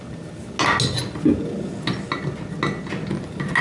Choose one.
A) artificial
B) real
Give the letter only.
B